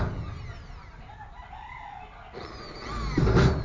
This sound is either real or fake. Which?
real